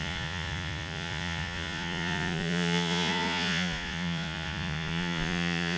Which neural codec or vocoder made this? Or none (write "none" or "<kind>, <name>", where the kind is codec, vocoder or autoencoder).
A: vocoder, Vocos